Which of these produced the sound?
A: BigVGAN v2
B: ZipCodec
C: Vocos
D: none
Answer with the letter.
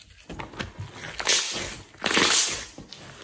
D